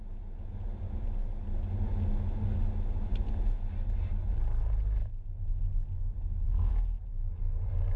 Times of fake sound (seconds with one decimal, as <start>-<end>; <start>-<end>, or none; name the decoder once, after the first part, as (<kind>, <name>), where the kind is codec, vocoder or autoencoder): none